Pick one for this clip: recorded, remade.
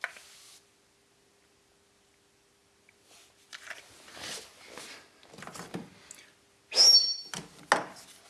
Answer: recorded